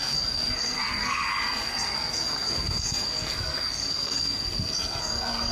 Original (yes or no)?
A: no